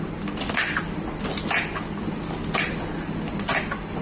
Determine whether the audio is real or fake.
real